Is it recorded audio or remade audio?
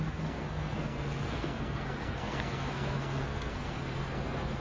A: remade